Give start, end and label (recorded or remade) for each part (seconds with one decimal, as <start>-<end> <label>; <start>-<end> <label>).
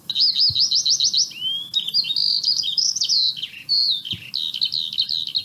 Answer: 0.0-2.3 recorded; 2.3-4.3 remade; 4.3-5.4 recorded